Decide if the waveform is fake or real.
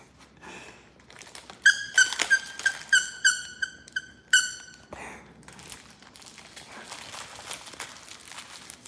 real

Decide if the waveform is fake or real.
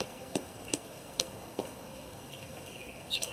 fake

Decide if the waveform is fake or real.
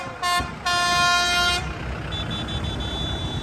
real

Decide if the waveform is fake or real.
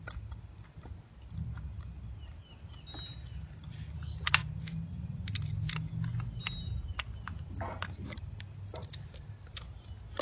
real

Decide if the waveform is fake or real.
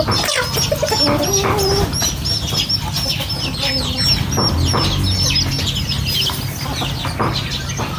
real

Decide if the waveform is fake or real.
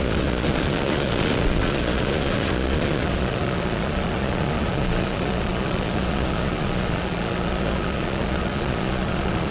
fake